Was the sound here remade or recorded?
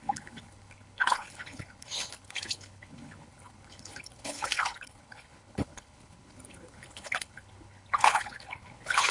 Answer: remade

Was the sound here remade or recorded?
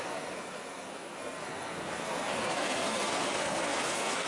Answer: remade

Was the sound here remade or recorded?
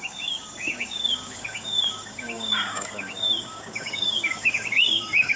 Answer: remade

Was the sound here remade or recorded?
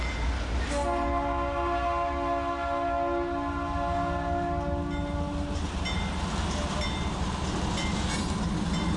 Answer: recorded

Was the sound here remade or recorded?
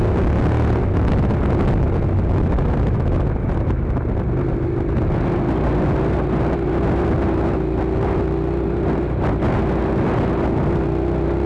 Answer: recorded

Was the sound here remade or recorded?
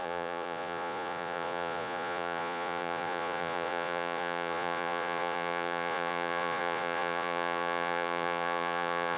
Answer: remade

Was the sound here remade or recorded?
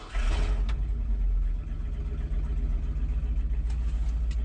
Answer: recorded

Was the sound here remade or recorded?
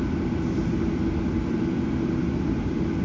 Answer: recorded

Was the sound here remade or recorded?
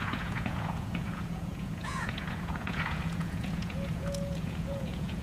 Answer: remade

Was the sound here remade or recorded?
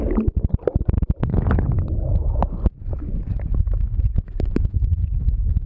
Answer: recorded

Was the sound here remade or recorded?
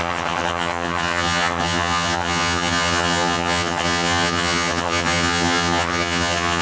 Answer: remade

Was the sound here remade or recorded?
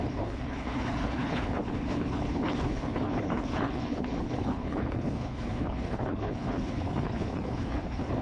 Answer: remade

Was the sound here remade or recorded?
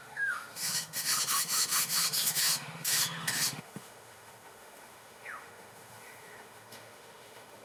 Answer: remade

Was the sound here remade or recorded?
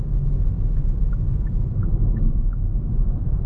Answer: remade